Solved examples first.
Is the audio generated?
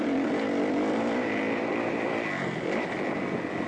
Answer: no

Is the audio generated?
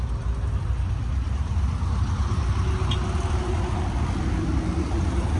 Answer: no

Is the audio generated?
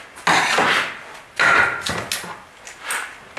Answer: no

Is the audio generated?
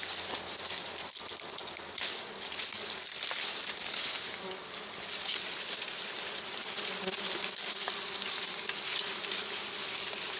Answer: no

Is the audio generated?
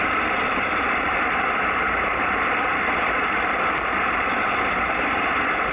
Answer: yes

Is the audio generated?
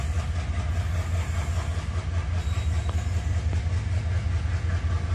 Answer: no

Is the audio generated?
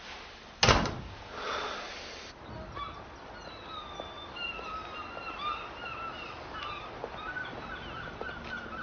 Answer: no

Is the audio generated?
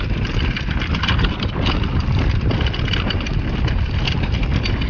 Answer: no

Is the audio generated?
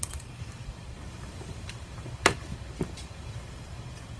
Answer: yes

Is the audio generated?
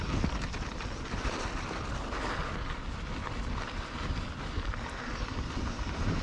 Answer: no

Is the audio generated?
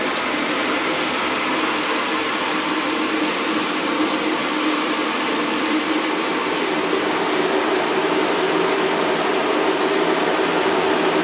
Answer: no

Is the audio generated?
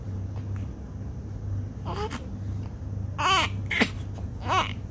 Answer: no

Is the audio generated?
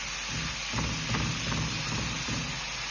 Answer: no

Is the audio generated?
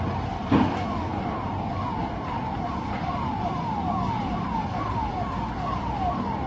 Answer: yes